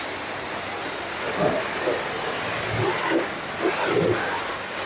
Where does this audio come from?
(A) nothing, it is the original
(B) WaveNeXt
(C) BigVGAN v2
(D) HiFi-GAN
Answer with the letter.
A